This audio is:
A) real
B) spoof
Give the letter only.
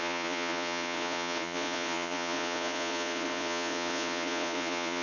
B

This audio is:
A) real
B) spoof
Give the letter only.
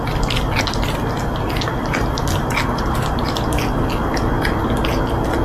A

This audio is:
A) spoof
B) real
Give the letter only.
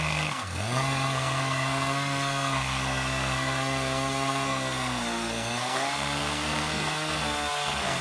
A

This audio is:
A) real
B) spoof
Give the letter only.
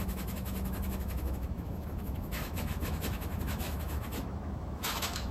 B